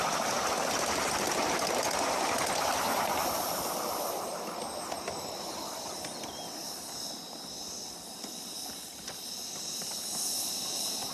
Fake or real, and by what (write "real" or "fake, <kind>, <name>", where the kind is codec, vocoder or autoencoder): real